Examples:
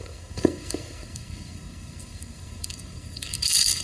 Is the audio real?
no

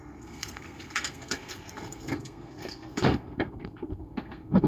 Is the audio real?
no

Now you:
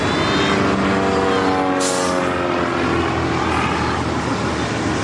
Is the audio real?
yes